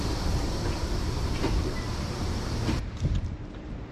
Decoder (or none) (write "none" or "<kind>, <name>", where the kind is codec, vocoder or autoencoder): vocoder, BigVGAN v2